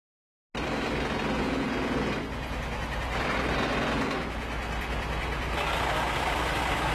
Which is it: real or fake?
real